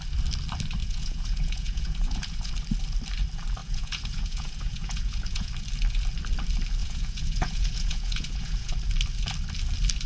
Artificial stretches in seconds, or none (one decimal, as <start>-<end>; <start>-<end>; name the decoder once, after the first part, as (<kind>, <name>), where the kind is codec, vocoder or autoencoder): 0.8-2.5 (vocoder, Vocos); 3.6-5.5; 6.8-8.7